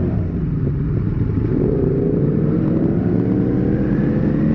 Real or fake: fake